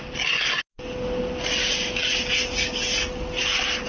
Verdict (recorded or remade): recorded